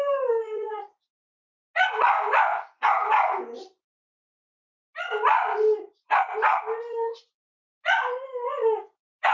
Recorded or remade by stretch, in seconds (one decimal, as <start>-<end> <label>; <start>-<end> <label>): 0.0-9.3 recorded